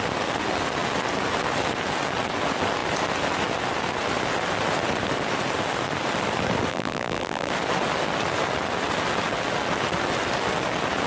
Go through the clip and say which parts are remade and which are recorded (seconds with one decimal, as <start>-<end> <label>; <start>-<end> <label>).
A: 0.0-6.7 recorded; 6.7-7.5 remade; 7.5-11.1 recorded